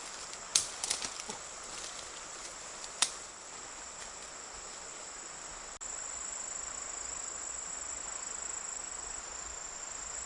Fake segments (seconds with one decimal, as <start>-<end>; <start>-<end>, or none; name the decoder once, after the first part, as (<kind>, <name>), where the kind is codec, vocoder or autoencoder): 0.5-3.5 (vocoder, BigVGAN v2)